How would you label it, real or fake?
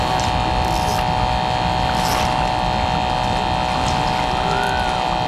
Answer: real